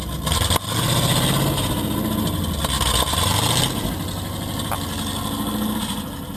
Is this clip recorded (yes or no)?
yes